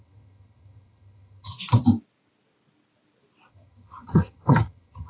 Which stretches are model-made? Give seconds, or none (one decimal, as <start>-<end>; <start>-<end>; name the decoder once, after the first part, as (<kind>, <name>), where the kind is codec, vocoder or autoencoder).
0.0-1.5 (vocoder, HiFi-GAN); 3.5-5.1